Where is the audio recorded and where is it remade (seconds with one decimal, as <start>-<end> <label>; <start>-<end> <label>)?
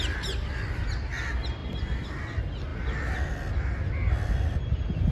0.0-5.1 recorded